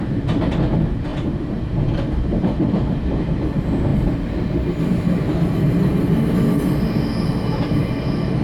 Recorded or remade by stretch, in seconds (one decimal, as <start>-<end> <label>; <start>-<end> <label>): 0.0-1.1 recorded; 1.1-1.9 remade; 1.9-2.3 recorded; 2.3-3.2 remade; 3.2-3.9 recorded; 3.9-5.8 remade; 5.8-8.4 recorded